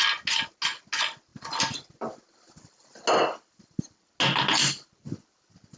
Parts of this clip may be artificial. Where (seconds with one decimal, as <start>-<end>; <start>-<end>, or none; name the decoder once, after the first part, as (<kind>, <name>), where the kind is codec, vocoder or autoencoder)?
none